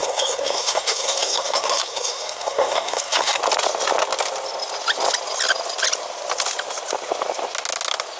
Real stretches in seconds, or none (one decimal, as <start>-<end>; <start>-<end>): 3.4-8.2